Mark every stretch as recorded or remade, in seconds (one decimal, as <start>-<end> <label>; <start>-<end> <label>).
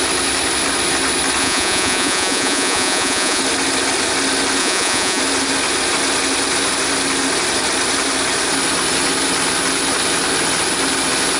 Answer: 0.0-1.4 recorded; 1.4-3.4 remade; 3.4-4.6 recorded; 4.6-5.2 remade; 5.2-11.4 recorded